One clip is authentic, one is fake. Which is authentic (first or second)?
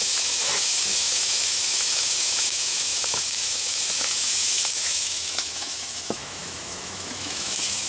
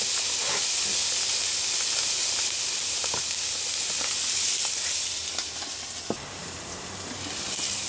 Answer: second